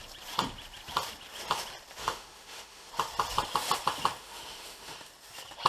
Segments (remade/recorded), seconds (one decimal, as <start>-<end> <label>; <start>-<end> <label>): 0.0-2.0 recorded; 2.0-2.9 remade; 2.9-4.2 recorded; 4.2-5.1 remade; 5.1-5.7 recorded